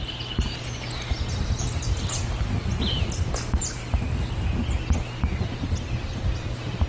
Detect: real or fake real